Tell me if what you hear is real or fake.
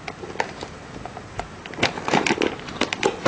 real